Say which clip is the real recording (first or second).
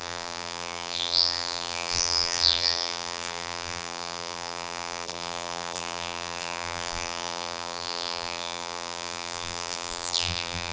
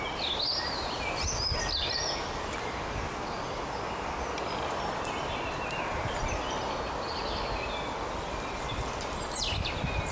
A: second